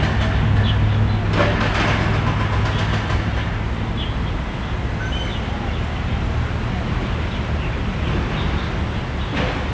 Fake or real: real